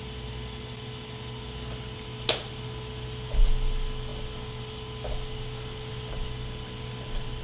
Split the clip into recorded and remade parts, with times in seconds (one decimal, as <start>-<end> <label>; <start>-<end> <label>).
0.0-7.4 recorded